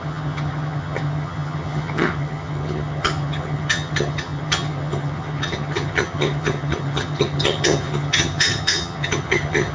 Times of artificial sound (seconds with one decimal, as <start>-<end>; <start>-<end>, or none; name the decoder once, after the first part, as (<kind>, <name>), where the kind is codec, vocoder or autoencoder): 0.0-9.7 (vocoder, HiFi-GAN)